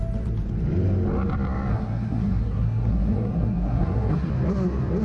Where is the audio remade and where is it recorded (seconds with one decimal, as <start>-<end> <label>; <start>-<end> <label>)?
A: 0.0-1.7 recorded; 1.7-4.3 remade; 4.3-5.0 recorded